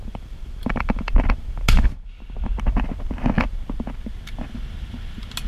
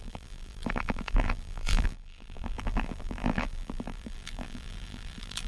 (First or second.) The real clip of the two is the first